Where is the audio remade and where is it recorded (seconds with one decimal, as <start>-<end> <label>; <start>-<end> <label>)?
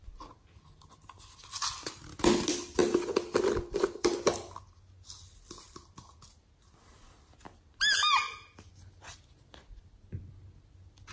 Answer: 0.0-11.1 recorded